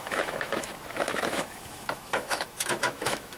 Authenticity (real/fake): fake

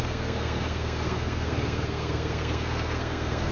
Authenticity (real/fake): fake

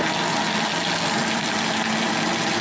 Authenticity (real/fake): real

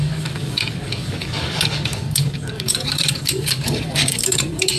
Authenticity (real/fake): fake